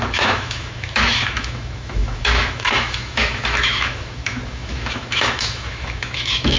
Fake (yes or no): yes